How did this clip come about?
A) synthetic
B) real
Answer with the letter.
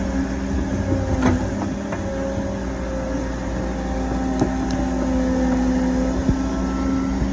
B